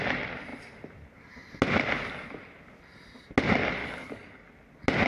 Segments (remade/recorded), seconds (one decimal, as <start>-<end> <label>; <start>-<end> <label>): 0.0-3.8 recorded; 3.8-4.5 remade; 4.5-5.1 recorded